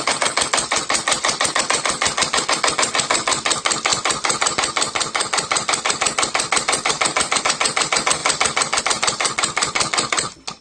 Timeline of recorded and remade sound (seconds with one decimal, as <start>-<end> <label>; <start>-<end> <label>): 0.0-10.6 recorded